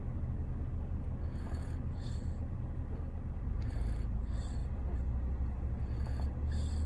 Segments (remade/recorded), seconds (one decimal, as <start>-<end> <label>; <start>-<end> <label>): 0.0-6.9 recorded